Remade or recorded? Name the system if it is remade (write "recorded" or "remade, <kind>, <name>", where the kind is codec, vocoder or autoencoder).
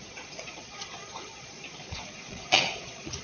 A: remade, vocoder, Vocos